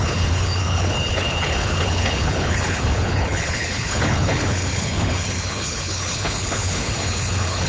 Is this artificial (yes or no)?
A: yes